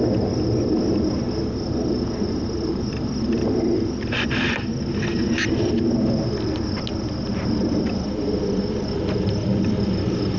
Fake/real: real